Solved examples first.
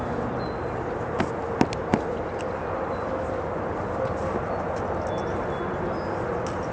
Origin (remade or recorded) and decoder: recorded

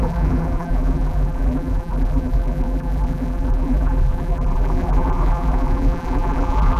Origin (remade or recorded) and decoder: remade, vocoder, BigVGAN v2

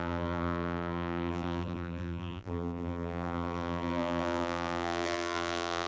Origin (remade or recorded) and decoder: remade, vocoder, BigVGAN v2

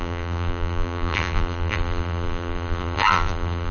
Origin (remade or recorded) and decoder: remade, vocoder, BigVGAN v2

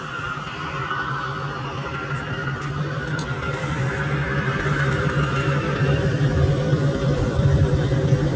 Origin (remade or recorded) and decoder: remade, vocoder, BigVGAN v2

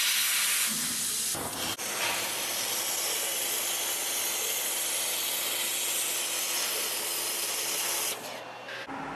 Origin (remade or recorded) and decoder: recorded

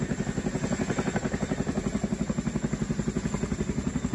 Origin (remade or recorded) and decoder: recorded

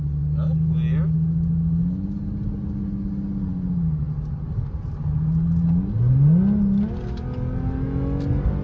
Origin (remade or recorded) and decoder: recorded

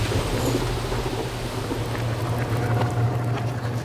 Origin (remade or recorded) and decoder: recorded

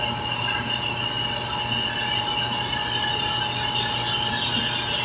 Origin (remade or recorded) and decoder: remade, vocoder, BigVGAN v2